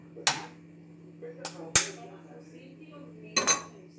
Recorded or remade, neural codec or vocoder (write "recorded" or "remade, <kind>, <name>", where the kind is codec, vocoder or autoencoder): recorded